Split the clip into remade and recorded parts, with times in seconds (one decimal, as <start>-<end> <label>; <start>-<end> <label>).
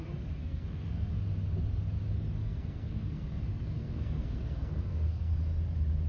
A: 0.0-0.4 recorded; 0.4-1.1 remade; 1.1-2.4 recorded; 2.4-5.3 remade; 5.3-6.1 recorded